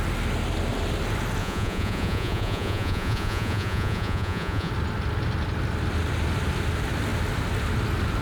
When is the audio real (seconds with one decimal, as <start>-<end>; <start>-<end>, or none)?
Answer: 0.0-1.4; 4.7-8.2